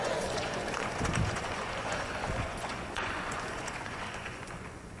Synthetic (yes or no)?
yes